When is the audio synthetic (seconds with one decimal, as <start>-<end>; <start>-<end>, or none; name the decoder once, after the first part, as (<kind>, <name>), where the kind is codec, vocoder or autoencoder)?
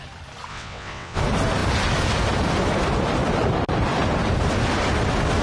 0.5-1.2 (vocoder, WaveNeXt)